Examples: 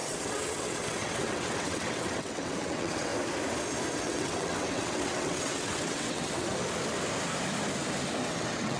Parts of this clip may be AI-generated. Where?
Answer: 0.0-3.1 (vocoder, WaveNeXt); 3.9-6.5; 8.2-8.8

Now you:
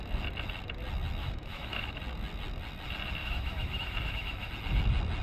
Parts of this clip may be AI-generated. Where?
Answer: 1.2-2.0 (autoencoder, DAC-VAE); 3.2-4.5